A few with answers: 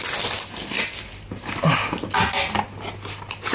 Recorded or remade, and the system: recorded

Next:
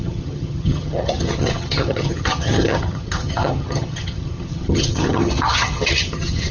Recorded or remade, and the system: remade, vocoder, HiFi-GAN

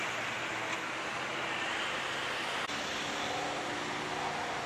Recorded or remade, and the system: recorded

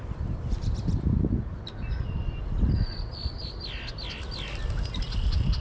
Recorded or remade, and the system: recorded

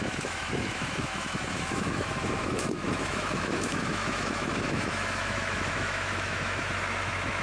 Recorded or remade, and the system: remade, autoencoder, DAC-VAE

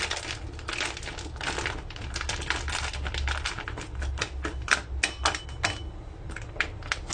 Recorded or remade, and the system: recorded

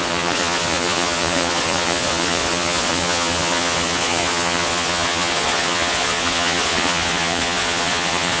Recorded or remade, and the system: remade, vocoder, Vocos